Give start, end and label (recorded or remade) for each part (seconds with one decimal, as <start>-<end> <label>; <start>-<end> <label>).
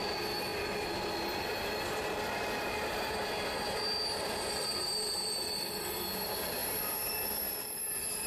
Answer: 0.0-8.3 recorded